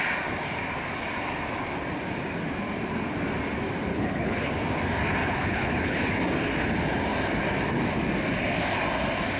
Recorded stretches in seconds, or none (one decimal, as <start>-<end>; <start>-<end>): 0.0-3.9; 4.5-5.2; 6.1-9.4